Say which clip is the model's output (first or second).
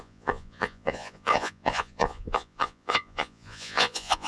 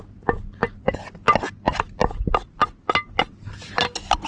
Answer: first